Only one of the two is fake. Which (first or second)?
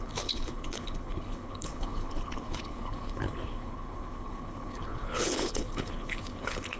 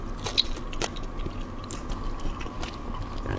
first